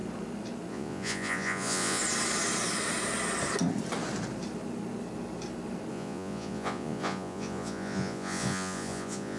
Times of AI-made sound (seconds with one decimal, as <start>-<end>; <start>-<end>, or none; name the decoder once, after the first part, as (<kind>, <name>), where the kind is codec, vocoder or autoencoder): 0.7-2.0 (vocoder, Vocos); 5.9-9.4